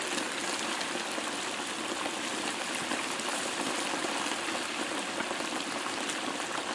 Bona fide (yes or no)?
yes